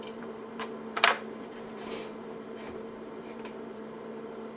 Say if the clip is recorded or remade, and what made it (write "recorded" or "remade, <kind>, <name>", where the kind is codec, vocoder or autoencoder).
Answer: remade, vocoder, BigVGAN v2